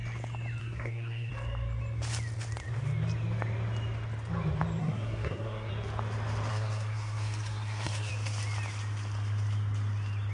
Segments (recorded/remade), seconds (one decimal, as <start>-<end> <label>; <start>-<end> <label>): 0.0-0.6 recorded; 0.6-1.3 remade; 1.3-4.8 recorded; 4.8-5.7 remade; 5.7-6.5 recorded; 6.5-8.1 remade; 8.1-10.3 recorded